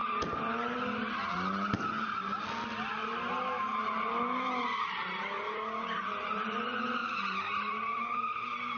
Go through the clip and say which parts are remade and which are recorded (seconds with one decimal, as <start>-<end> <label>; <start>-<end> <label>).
0.0-4.9 recorded; 4.9-8.8 remade